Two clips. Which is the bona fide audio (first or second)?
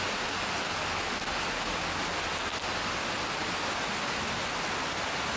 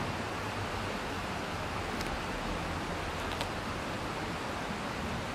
first